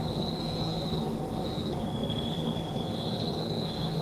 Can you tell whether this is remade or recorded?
remade